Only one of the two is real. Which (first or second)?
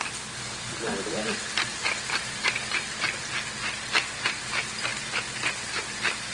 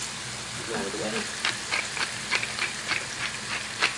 first